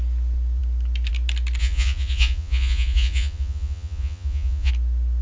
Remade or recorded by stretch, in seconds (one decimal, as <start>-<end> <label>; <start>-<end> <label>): 0.0-1.6 recorded; 1.6-4.7 remade; 4.7-5.2 recorded